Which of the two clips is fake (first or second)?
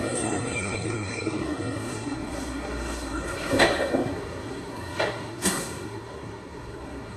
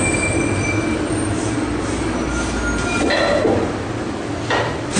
first